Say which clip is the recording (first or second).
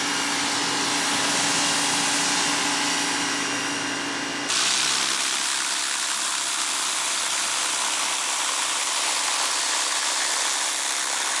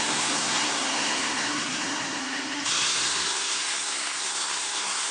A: first